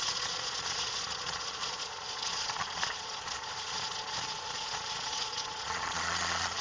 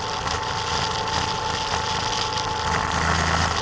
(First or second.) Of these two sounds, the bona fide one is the second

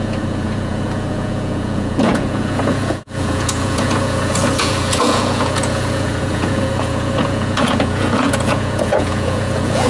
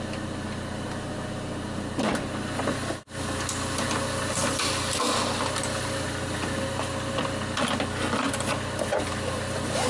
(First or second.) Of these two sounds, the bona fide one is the second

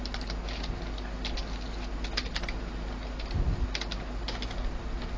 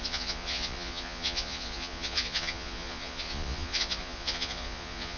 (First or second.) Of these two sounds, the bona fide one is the first